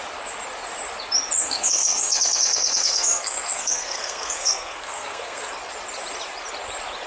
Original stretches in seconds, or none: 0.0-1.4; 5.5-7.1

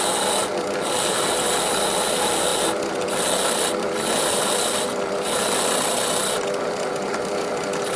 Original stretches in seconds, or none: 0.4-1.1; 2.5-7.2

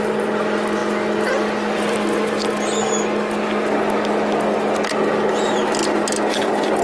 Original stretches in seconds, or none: 0.0-6.8